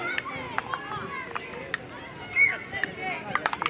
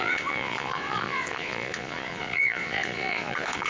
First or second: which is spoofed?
second